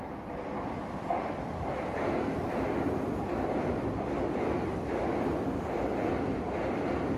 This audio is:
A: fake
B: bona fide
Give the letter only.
B